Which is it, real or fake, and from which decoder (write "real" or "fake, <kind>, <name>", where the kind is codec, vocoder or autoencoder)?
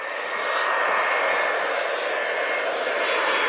real